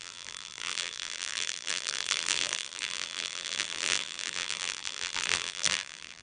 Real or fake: fake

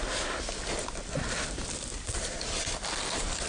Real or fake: real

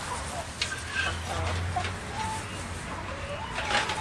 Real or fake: real